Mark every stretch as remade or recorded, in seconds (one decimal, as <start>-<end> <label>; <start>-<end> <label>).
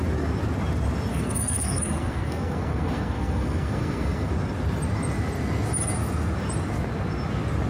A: 0.0-1.1 recorded; 1.1-4.3 remade; 4.3-7.7 recorded